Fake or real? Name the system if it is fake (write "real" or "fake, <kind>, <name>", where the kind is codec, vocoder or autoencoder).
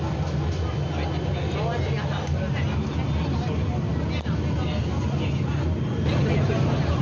real